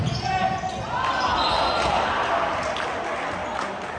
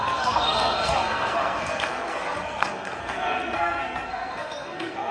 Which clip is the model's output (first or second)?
second